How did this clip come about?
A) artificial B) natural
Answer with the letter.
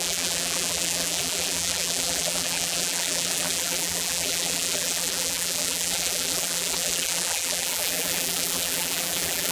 A